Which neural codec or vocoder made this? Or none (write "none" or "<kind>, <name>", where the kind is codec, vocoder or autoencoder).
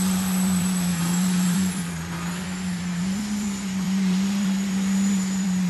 vocoder, BigVGAN v2